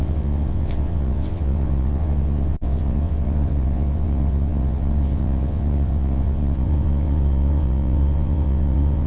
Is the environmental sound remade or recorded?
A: remade